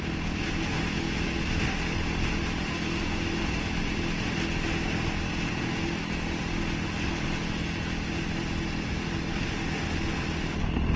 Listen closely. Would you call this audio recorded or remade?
recorded